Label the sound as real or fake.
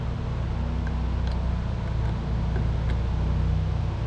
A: real